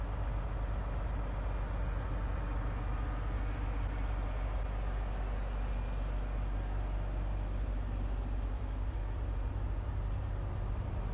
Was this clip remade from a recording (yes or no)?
no